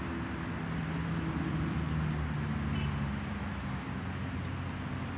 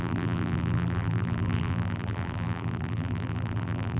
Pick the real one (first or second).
first